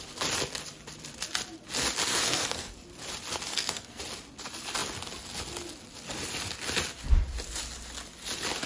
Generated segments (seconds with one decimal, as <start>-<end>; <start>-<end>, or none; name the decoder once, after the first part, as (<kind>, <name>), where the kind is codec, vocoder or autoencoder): 2.1-2.7 (codec, SNAC); 3.5-4.0